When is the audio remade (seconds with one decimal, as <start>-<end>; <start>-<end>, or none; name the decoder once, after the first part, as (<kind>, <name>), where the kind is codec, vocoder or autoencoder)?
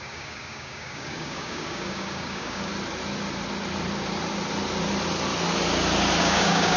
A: 0.0-2.7 (codec, DAC); 6.2-6.8